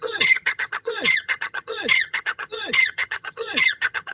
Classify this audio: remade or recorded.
remade